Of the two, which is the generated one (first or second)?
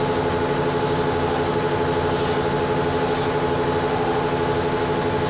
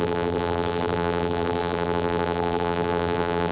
second